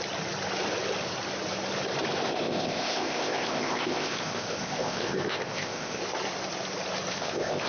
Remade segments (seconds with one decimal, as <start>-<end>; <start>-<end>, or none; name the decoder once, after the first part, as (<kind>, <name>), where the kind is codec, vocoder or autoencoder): 2.3-6.0 (codec, ZipCodec); 7.1-7.7